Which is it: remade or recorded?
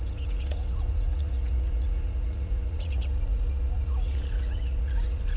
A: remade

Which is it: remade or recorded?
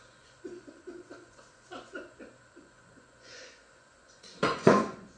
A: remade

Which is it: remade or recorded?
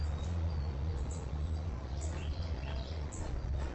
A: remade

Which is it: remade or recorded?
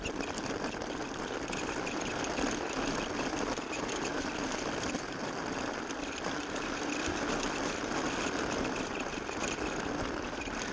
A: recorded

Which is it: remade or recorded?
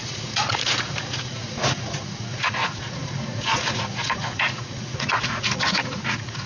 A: remade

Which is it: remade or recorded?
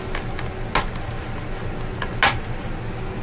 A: recorded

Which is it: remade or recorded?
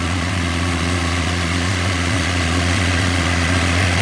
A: remade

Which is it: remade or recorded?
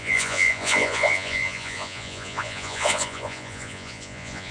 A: remade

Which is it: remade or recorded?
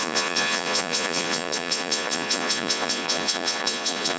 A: remade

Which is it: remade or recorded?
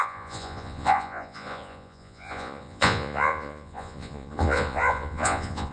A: remade